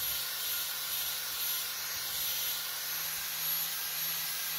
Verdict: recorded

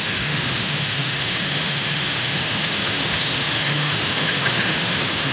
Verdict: remade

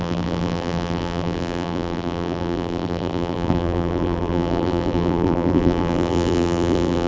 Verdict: remade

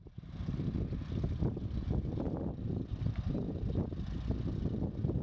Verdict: recorded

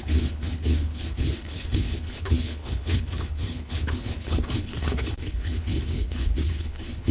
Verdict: remade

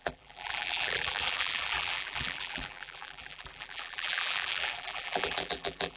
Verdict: remade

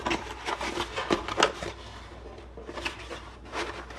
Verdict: recorded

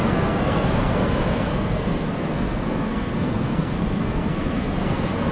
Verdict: remade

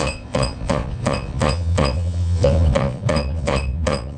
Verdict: remade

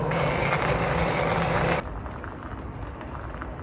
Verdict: recorded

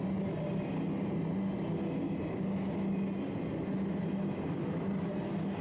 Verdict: recorded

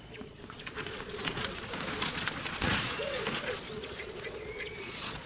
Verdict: remade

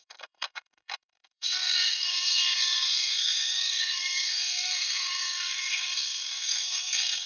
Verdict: remade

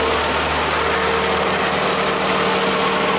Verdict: recorded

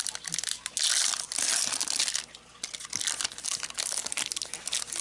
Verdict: recorded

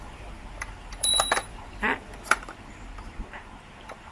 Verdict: remade